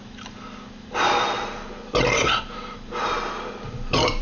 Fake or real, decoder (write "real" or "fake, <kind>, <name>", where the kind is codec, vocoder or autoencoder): real